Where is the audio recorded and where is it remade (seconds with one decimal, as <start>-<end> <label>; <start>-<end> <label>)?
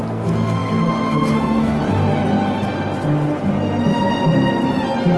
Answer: 0.0-1.8 remade; 1.8-5.2 recorded